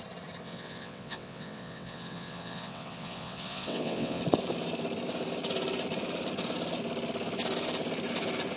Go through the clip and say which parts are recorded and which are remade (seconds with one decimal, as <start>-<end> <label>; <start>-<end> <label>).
0.0-0.4 recorded; 0.4-4.2 remade; 4.2-8.6 recorded